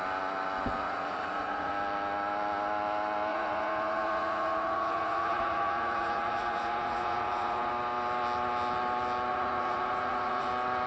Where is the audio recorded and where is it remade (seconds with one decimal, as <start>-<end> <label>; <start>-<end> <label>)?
0.0-0.8 recorded; 0.8-1.7 remade; 1.7-3.3 recorded; 3.3-7.7 remade; 7.7-9.3 recorded; 9.3-10.5 remade; 10.5-10.9 recorded